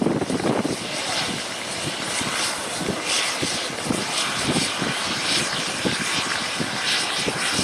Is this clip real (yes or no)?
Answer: yes